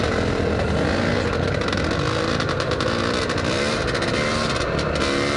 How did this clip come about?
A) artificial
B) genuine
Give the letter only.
B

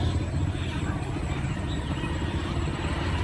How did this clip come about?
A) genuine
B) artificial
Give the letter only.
A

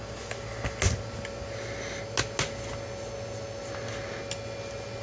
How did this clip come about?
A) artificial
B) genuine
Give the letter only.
B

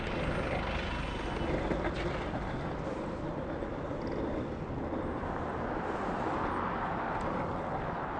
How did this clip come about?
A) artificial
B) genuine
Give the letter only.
B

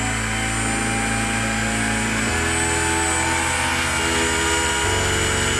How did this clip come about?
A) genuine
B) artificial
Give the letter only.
A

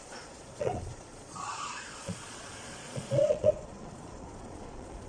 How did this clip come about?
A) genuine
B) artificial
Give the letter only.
B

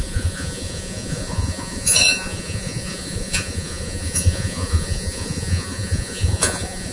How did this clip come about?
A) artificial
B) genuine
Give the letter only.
A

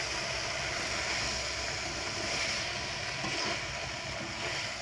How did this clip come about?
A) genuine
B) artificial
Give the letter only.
A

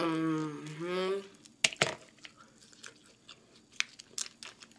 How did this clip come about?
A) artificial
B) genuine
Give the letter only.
B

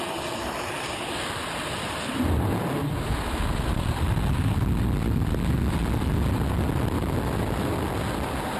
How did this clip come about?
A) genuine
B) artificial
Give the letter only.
A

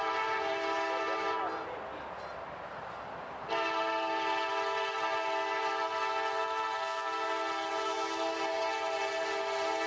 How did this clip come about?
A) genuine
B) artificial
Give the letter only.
A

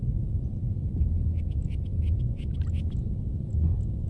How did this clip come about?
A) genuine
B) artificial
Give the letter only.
A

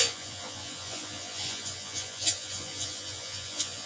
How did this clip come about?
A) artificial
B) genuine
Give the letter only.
A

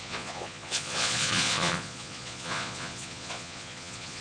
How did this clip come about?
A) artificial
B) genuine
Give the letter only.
A